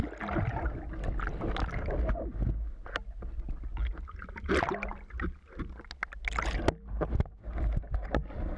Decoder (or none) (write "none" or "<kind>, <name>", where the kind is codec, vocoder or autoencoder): none